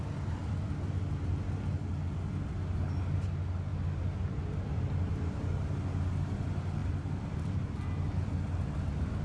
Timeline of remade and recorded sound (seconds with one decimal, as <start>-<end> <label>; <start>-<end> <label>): 0.0-3.7 recorded; 3.7-5.3 remade; 5.3-6.8 recorded; 6.8-7.6 remade; 7.6-9.2 recorded